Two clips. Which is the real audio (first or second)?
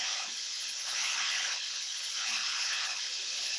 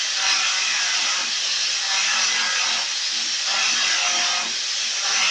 second